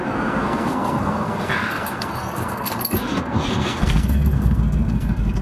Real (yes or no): no